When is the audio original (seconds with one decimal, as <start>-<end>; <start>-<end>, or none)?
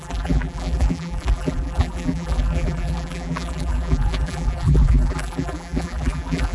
none